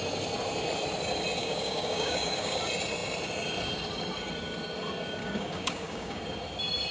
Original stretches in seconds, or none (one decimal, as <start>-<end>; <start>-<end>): 0.0-1.4; 2.6-5.2; 6.2-6.9